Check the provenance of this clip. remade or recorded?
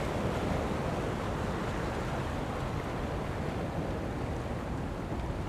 recorded